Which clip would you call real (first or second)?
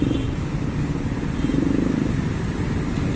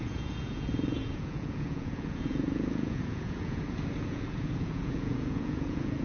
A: first